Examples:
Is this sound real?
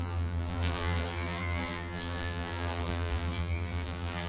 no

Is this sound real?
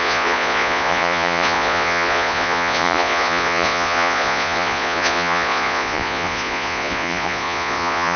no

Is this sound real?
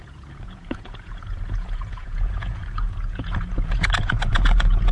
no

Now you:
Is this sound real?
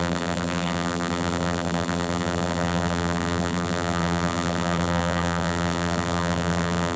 no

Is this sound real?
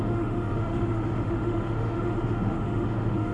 no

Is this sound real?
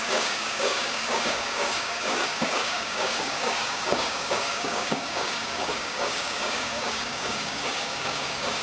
no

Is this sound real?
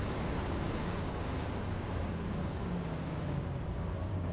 no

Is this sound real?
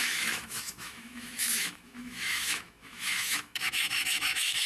no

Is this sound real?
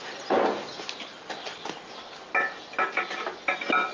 yes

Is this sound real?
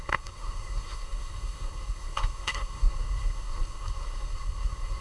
no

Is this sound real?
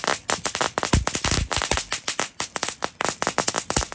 yes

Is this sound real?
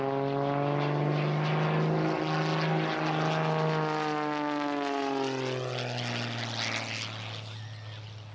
yes